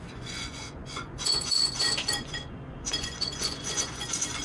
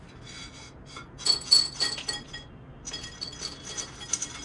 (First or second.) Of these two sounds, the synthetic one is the first